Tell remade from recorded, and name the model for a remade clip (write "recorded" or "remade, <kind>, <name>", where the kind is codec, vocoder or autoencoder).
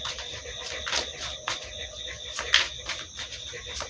recorded